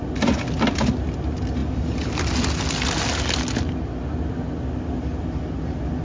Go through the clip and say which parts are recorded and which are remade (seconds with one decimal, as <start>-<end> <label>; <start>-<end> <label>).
0.0-6.0 recorded